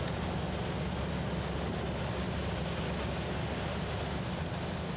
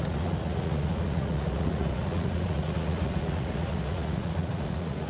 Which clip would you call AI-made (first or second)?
second